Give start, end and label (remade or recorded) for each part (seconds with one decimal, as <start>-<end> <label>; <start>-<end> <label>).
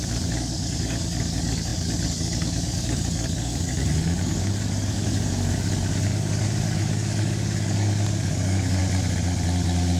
0.0-8.8 remade; 8.8-10.0 recorded